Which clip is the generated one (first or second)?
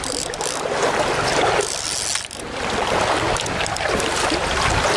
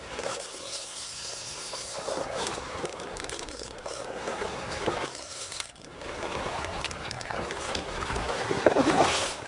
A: second